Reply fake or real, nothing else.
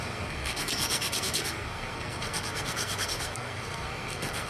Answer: fake